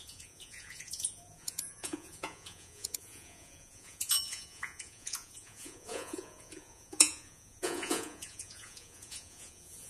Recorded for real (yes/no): no